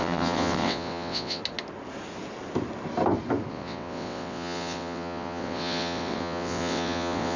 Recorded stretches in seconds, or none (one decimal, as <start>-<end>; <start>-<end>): 1.4-3.5